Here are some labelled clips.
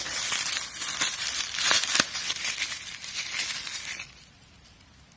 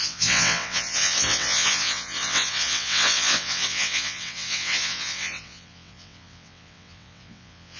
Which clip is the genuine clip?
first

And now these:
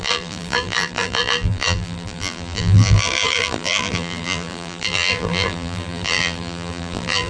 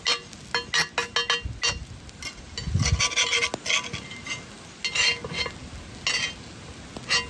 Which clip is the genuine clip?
second